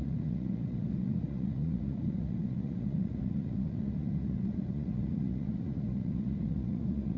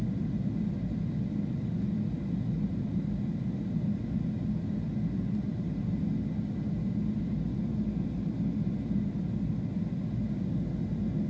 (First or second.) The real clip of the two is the second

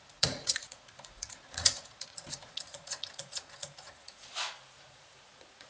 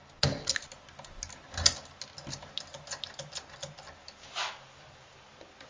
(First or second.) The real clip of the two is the second